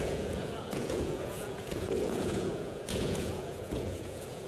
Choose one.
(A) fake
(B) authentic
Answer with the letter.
A